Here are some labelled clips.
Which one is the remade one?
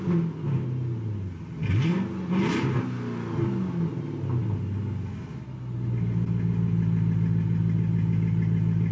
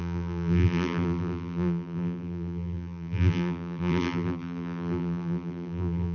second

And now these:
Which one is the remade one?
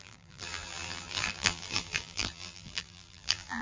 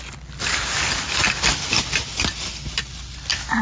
first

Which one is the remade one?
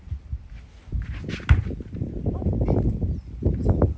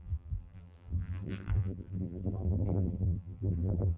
second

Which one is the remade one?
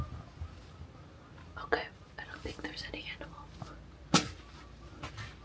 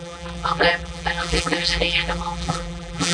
second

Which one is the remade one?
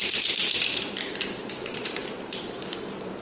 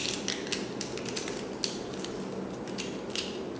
first